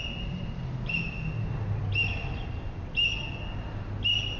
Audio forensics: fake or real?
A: real